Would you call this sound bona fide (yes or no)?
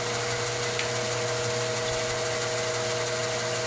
yes